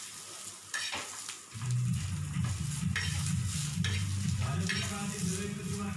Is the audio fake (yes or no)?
no